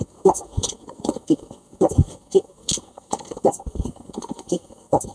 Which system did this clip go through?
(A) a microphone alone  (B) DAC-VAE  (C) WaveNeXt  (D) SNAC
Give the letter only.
D